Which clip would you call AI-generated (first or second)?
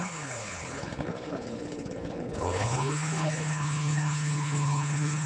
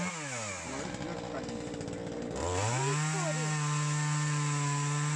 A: first